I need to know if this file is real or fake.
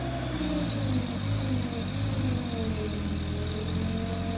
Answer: real